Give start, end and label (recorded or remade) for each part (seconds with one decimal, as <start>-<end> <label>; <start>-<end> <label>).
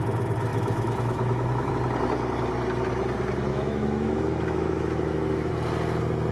0.0-0.5 recorded; 0.5-1.7 remade; 1.7-3.5 recorded; 3.5-5.5 remade; 5.5-6.3 recorded